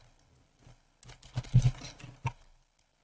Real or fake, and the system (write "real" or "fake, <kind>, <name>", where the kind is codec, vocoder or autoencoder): real